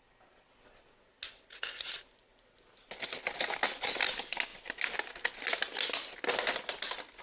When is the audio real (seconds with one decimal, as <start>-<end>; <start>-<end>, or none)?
0.0-7.2